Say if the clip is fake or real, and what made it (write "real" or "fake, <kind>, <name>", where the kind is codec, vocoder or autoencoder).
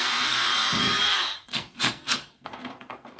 fake, codec, SNAC